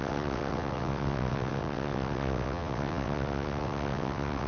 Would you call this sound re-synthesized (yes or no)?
yes